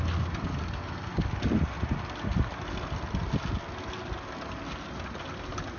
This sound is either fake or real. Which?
real